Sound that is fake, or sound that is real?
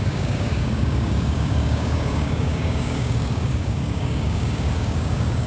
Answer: fake